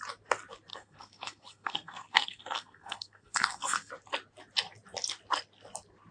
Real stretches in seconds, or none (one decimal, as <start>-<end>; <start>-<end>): 0.0-0.7; 3.9-6.1